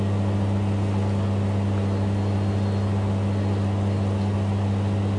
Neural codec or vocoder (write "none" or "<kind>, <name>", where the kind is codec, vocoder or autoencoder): none